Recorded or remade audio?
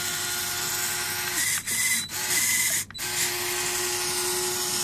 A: recorded